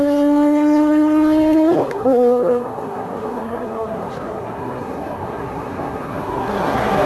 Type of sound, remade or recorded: remade